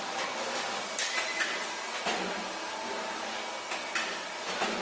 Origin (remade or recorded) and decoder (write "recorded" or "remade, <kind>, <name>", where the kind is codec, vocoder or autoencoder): recorded